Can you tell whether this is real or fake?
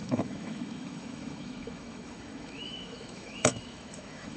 fake